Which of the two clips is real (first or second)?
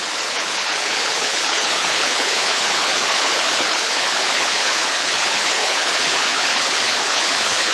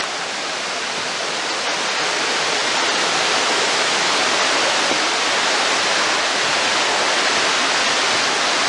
second